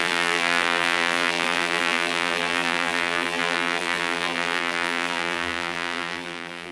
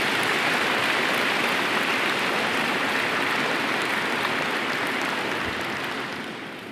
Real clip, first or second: second